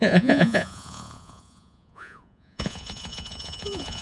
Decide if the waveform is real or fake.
fake